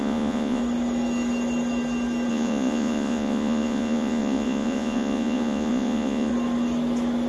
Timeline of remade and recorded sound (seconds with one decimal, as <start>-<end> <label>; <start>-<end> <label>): 0.0-0.6 remade; 0.6-2.3 recorded; 2.3-6.3 remade; 6.3-7.3 recorded